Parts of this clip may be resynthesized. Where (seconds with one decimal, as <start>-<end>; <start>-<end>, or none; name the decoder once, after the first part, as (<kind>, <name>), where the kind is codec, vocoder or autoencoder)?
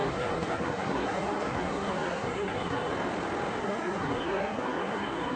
0.0-2.9 (codec, SNAC); 3.6-5.4